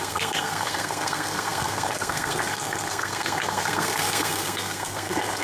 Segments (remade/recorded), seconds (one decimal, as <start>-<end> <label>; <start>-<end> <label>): 0.0-5.4 remade